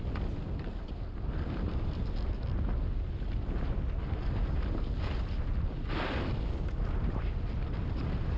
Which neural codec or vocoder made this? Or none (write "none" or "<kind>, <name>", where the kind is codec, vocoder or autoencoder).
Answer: none